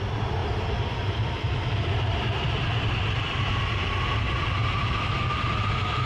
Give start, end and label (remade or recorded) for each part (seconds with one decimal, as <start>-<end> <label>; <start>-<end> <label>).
0.0-0.4 recorded; 0.4-3.6 remade; 3.6-4.6 recorded; 4.6-6.1 remade